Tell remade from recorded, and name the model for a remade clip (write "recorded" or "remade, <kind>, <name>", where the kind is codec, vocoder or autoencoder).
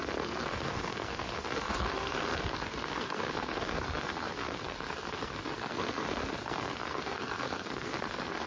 remade, codec, SNAC